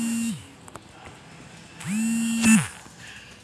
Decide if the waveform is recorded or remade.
recorded